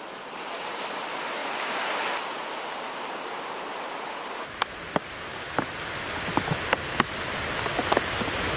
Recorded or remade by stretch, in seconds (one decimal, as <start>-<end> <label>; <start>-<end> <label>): 0.0-8.6 recorded